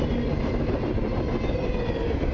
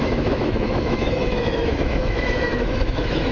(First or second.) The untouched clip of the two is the first